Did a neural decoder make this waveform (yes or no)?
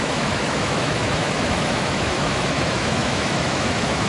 yes